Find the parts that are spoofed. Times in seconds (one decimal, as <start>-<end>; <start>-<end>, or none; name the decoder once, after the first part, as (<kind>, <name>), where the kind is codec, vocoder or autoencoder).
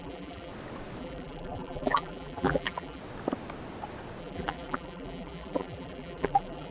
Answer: 0.0-0.5 (vocoder, BigVGAN v2); 1.0-3.0; 4.2-6.7